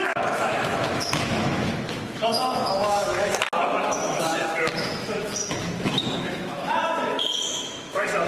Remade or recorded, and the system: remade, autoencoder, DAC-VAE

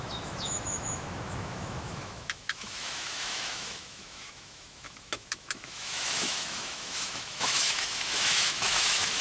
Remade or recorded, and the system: remade, autoencoder, DAC-VAE